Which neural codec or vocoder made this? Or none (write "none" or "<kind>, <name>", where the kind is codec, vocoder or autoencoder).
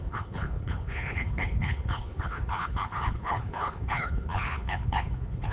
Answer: codec, HILCodec